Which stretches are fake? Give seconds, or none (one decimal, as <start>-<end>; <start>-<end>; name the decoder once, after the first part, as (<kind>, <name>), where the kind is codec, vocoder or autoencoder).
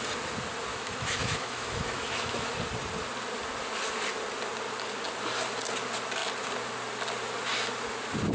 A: 0.7-2.5 (autoencoder, DAC-VAE)